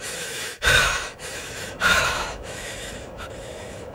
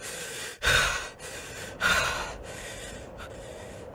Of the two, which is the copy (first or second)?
first